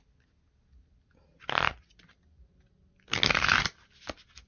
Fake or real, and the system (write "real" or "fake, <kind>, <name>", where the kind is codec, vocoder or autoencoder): real